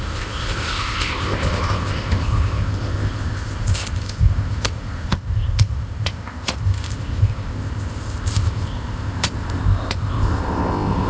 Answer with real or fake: fake